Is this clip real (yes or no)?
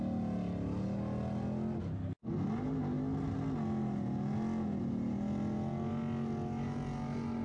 yes